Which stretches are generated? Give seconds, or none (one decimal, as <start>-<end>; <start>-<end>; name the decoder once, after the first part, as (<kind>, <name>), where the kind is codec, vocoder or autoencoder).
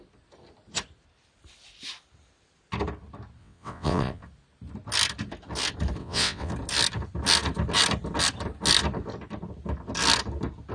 3.4-4.2 (vocoder, WaveNeXt); 6.0-6.5